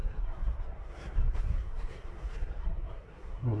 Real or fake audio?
fake